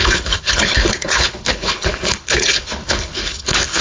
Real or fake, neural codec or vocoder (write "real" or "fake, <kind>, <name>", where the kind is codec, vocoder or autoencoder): fake, codec, HILCodec